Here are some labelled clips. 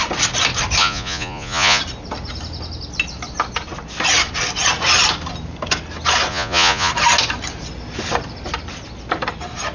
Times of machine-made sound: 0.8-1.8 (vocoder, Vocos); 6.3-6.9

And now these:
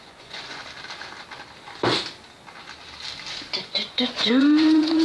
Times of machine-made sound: 0.0-0.6 (vocoder, Vocos); 3.6-5.0

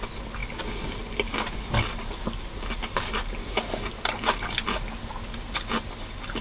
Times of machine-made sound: none

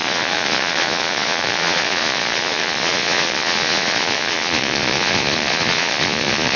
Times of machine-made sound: 0.0-6.6 (vocoder, Vocos)

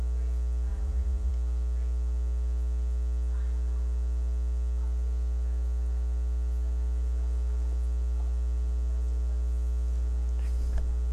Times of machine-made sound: 0.7-1.3 (vocoder, Vocos)

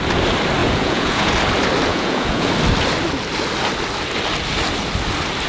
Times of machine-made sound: 0.6-1.3 (vocoder, Vocos); 1.9-2.5

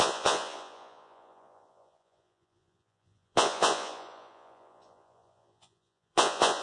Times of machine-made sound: 0.0-6.6 (vocoder, Vocos)